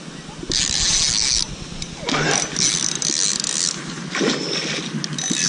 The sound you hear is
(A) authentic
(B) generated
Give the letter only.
A